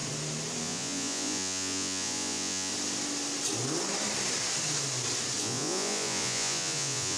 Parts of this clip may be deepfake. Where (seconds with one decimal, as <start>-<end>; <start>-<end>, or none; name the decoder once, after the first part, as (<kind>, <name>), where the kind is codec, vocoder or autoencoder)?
0.6-2.7 (vocoder, Vocos); 5.4-7.2